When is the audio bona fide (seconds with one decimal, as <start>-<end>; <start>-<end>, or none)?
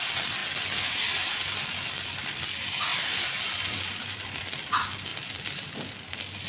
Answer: 0.4-2.2; 2.9-3.9